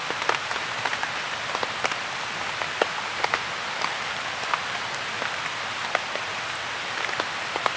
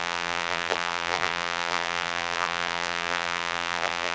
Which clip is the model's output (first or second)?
second